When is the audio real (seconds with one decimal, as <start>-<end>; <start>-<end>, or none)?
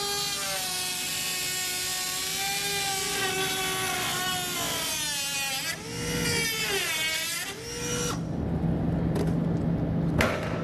0.0-10.6